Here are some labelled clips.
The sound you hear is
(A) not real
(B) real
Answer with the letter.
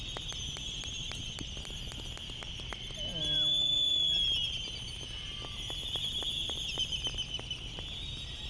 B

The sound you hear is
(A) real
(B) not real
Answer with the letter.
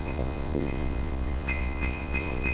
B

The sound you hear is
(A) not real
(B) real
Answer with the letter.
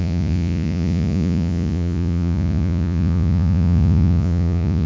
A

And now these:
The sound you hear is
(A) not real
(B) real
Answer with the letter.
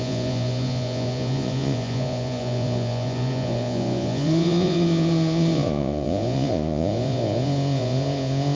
A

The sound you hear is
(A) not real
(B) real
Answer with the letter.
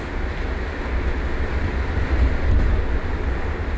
B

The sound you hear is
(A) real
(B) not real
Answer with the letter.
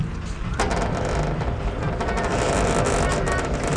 A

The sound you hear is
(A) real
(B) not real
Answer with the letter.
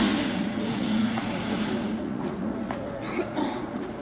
B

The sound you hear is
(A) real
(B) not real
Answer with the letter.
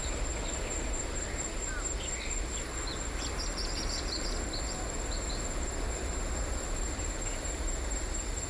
A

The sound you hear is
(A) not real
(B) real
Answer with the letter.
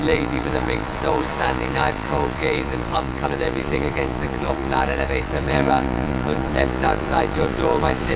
A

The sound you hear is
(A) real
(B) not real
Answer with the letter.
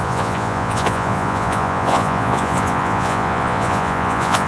B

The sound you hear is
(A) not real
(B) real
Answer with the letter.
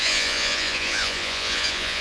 A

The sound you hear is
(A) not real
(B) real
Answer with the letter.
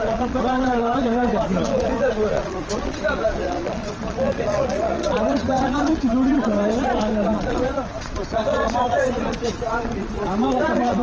A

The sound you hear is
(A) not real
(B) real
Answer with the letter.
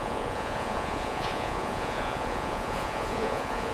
A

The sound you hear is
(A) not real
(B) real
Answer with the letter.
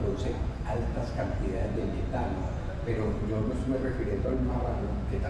A